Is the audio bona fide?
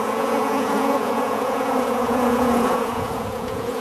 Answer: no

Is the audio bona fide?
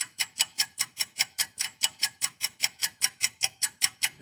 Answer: no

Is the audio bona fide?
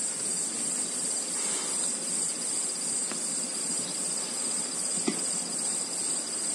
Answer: yes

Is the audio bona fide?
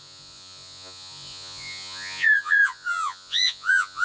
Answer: no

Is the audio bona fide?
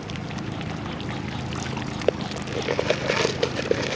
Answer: yes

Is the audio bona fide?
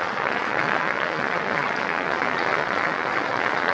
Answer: no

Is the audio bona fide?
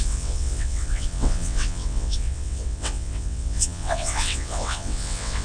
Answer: no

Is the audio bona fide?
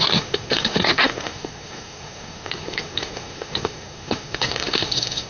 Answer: no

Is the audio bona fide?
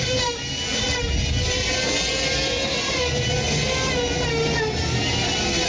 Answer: yes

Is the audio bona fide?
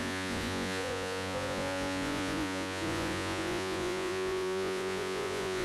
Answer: no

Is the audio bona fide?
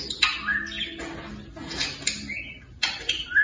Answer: yes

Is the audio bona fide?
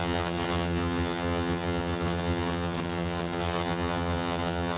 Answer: no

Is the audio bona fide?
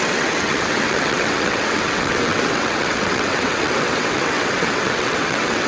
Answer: no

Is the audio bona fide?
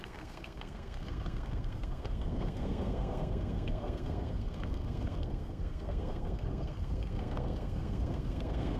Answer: no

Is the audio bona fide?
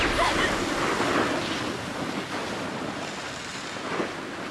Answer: yes